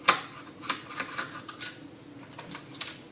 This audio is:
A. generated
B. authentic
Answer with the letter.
B